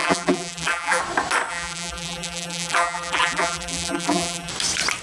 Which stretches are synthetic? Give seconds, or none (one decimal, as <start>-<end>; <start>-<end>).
0.0-1.0; 1.5-4.5

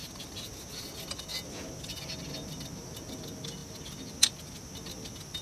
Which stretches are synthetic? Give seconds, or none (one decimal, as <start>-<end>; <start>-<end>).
none

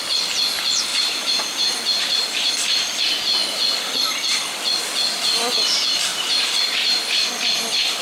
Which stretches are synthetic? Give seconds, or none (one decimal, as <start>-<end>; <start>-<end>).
0.9-2.5; 6.1-7.3

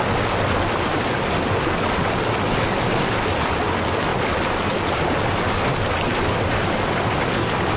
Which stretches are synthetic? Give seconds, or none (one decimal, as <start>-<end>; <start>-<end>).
6.1-7.8

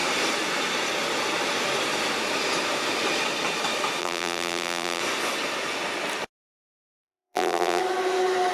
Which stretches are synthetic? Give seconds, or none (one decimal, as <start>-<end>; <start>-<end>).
4.0-5.0; 6.7-7.8

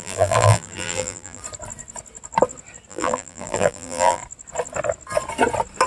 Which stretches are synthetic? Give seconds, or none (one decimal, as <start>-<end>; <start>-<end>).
0.0-1.4; 2.9-4.2

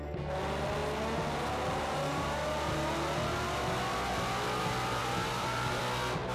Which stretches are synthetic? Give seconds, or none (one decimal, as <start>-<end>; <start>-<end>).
5.0-5.8

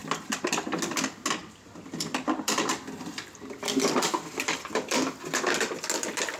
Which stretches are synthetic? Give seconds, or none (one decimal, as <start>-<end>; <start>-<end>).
0.0-0.7; 1.4-5.2